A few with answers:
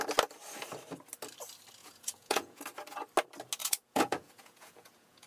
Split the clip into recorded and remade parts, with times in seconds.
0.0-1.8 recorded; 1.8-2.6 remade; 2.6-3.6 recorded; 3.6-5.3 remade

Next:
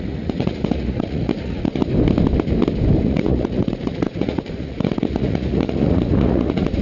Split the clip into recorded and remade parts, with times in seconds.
0.0-1.8 remade; 1.8-3.0 recorded; 3.0-6.8 remade

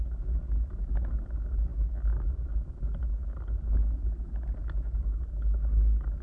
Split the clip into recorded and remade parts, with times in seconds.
0.0-6.2 recorded

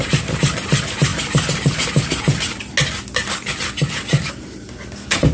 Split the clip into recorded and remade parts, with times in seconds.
0.0-5.3 recorded

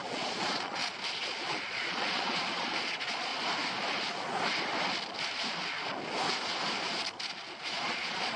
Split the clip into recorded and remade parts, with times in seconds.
0.0-0.8 remade; 0.8-1.5 recorded; 1.5-3.3 remade; 3.3-7.7 recorded; 7.7-8.4 remade

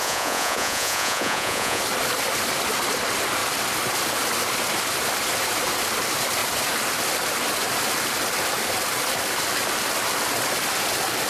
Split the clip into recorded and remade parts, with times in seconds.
0.0-1.8 remade; 1.8-11.3 recorded

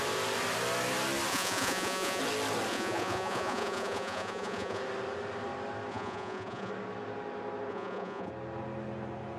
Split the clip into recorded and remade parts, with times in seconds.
0.0-1.3 recorded; 1.3-2.2 remade; 2.2-2.7 recorded; 2.7-4.8 remade; 4.8-5.9 recorded; 5.9-6.7 remade; 6.7-7.7 recorded; 7.7-8.3 remade; 8.3-9.4 recorded

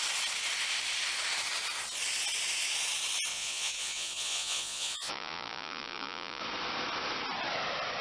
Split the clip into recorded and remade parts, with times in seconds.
0.0-3.3 recorded; 3.3-6.4 remade; 6.4-8.0 recorded